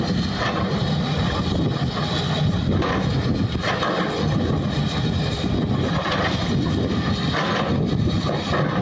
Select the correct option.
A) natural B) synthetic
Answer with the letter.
A